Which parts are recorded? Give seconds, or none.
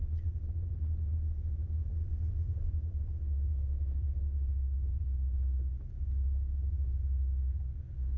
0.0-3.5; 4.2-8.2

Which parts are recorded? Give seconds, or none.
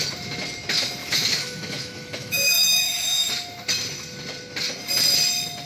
0.0-1.0; 3.3-5.7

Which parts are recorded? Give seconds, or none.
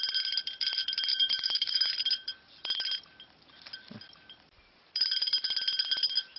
0.0-1.1; 1.9-6.4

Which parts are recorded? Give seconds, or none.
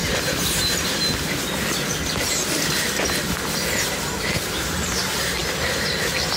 0.0-6.4